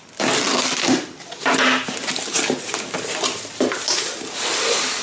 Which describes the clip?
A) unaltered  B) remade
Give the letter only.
A